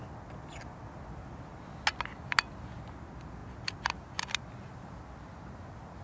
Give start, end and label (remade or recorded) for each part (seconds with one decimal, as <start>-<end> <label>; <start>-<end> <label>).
0.0-6.0 recorded